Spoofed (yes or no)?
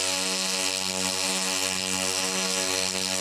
no